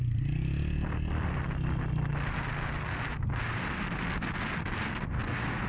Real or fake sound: real